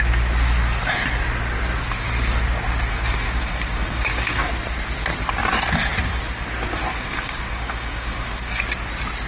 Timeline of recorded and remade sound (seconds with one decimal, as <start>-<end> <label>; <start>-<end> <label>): 0.0-2.9 recorded; 2.9-4.5 remade; 4.5-6.9 recorded; 6.9-8.6 remade; 8.6-9.3 recorded